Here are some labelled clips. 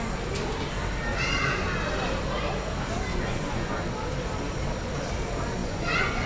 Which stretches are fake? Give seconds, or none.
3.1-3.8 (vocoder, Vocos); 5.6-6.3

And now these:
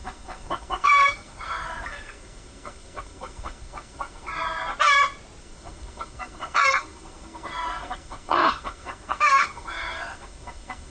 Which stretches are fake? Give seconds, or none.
0.0-4.3 (codec, SNAC); 5.4-10.9

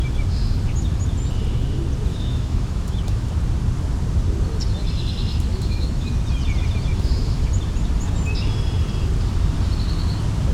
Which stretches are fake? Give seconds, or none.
2.1-3.3 (autoencoder, DAC-VAE); 5.5-6.1; 6.9-7.5

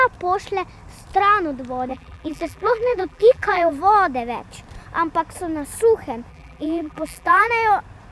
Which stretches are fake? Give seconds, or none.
1.9-3.7 (vocoder, BigVGAN v2); 6.3-7.5

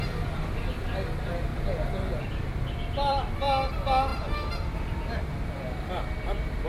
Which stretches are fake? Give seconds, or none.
0.0-0.9 (vocoder, BigVGAN v2); 1.5-3.3